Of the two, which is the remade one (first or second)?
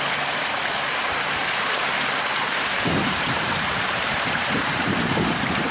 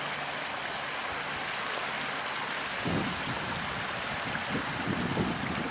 first